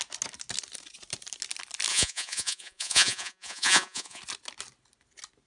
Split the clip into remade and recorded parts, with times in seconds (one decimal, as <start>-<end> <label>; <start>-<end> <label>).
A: 0.0-1.9 recorded; 1.9-4.2 remade; 4.2-5.5 recorded